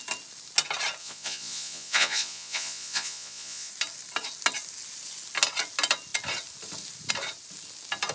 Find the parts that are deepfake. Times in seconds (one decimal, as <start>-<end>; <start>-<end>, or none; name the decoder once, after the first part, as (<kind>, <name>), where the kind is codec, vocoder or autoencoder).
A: 1.0-3.7 (vocoder, Vocos)